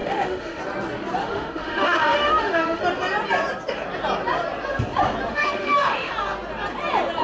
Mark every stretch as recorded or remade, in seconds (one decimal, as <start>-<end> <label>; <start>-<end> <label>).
0.0-0.6 remade; 0.6-1.2 recorded; 1.2-2.8 remade; 2.8-5.3 recorded; 5.3-6.1 remade; 6.1-7.2 recorded